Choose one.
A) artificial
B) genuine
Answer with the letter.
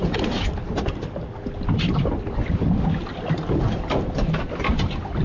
B